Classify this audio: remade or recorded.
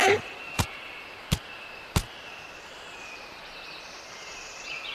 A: recorded